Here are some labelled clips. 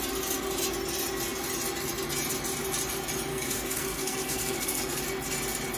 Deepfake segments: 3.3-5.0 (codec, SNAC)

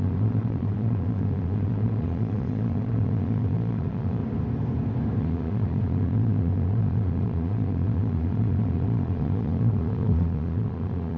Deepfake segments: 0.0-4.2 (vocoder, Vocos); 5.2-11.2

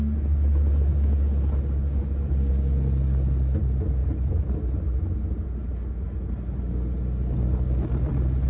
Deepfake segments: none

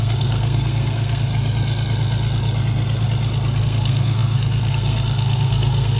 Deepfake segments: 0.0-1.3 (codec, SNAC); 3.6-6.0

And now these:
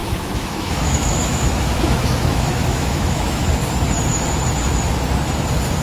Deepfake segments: 0.0-3.5 (autoencoder, DAC-VAE)